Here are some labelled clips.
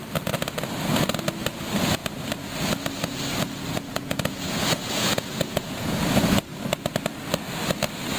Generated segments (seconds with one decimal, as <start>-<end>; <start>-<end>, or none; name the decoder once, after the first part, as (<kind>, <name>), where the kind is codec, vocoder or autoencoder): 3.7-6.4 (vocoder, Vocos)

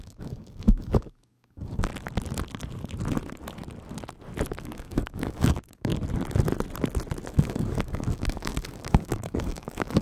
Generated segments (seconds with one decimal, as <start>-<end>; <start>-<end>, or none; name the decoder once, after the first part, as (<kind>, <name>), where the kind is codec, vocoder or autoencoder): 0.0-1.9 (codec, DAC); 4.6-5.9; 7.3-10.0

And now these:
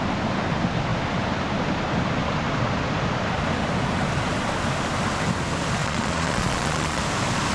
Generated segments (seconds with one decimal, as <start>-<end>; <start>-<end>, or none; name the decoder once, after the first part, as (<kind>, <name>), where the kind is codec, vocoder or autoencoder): 5.8-7.0 (vocoder, Vocos)

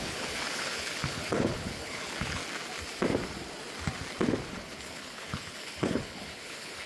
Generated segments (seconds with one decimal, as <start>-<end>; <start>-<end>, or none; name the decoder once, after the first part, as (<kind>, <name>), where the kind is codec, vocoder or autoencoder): 0.0-2.4 (codec, HILCodec); 4.5-6.9